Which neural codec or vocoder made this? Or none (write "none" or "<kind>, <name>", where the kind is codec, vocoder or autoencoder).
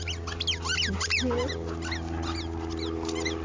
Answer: none